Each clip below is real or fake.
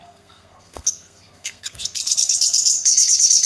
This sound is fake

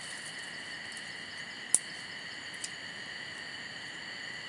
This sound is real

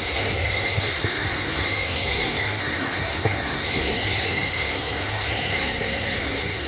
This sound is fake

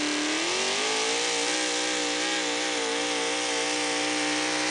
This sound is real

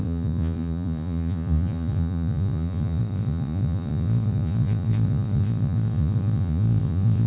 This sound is fake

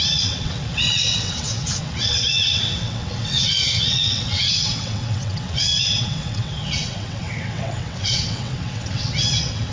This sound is fake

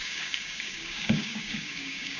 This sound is fake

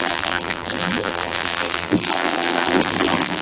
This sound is fake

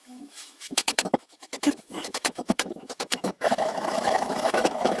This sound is fake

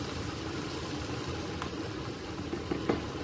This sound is real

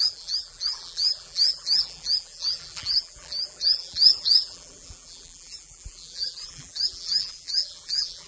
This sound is fake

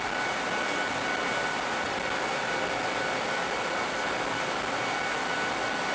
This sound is real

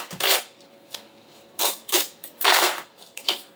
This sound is fake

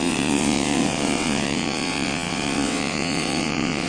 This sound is fake